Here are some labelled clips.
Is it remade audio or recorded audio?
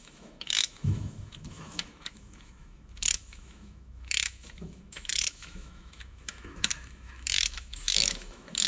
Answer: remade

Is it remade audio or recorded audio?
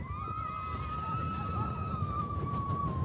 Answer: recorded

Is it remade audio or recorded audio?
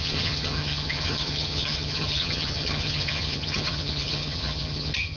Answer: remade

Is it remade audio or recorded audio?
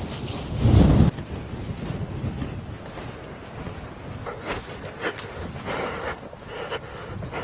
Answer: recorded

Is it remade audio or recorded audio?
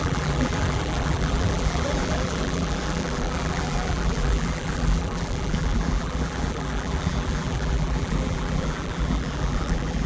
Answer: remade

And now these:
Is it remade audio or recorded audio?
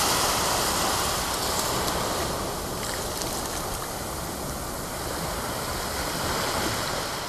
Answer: recorded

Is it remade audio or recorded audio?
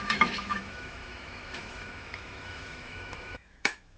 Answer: remade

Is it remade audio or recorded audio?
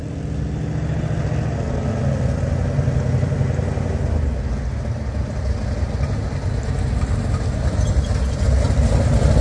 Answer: recorded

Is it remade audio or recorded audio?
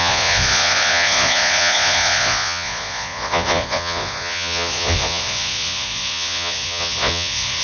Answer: remade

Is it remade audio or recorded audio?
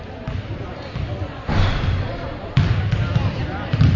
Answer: recorded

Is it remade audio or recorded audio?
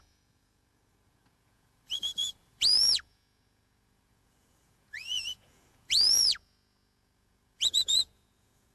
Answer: remade